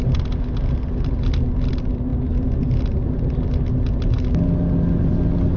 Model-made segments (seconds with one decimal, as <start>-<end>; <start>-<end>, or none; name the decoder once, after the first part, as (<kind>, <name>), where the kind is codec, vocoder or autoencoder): none